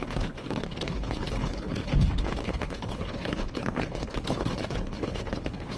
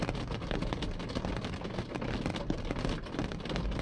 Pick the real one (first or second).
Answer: second